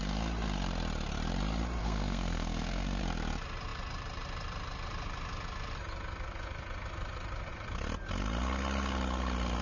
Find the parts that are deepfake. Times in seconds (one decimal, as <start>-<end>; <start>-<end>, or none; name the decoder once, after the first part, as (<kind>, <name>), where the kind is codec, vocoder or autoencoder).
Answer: 1.8-3.0 (codec, SNAC)